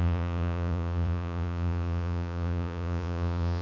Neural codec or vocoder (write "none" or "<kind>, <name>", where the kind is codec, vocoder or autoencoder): vocoder, Vocos